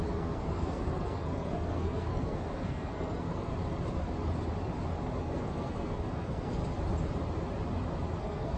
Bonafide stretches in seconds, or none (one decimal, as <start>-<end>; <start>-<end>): 3.5-5.2; 6.6-8.2